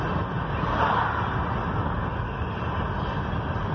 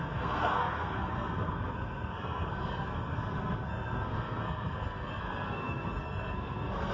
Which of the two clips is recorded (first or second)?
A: first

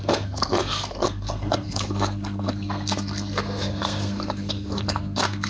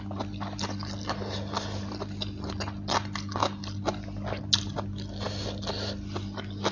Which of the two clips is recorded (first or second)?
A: second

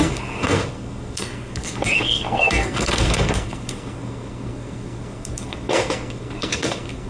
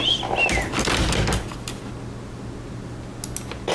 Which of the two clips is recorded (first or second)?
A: second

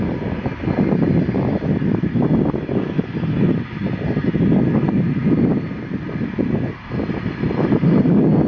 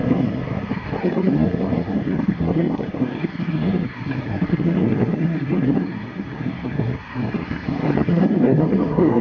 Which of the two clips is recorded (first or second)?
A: first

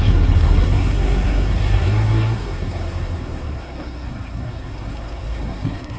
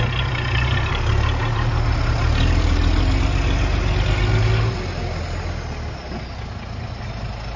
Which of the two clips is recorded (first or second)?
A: second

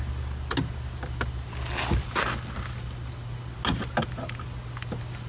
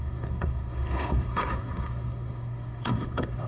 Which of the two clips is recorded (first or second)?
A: first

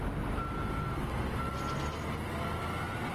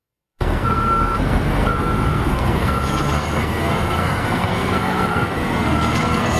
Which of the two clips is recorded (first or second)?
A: first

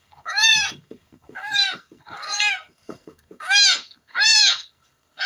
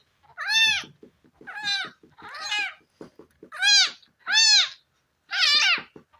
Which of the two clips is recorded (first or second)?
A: second